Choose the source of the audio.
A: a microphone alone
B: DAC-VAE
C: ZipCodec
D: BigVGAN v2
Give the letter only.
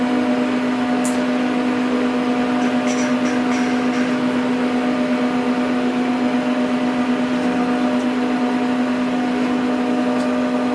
A